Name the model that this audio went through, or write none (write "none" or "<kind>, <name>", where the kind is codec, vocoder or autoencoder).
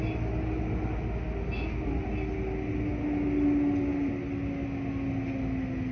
none